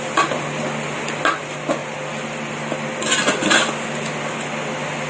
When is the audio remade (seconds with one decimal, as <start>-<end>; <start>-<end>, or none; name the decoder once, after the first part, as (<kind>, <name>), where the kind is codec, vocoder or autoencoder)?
none

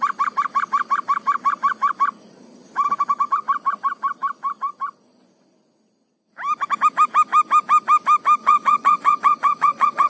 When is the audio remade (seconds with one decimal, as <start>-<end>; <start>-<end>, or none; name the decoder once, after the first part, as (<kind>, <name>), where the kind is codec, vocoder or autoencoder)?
8.4-10.1 (vocoder, WaveNeXt)

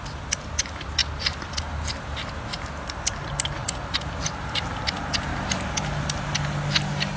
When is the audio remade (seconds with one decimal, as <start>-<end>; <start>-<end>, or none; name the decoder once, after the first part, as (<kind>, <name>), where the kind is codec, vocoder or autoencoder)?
1.0-1.6 (vocoder, BigVGAN v2); 3.6-4.2; 5.3-6.0

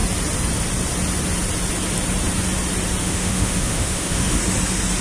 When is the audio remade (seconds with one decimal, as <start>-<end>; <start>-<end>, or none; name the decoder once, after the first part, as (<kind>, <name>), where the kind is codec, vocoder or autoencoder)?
3.0-4.4 (autoencoder, DAC-VAE)

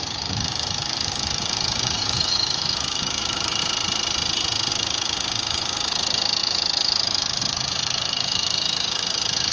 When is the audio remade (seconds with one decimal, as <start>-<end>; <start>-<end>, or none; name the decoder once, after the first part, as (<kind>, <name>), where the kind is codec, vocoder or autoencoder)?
0.0-3.6 (codec, DAC); 4.7-9.5